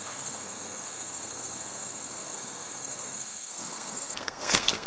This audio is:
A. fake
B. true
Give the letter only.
A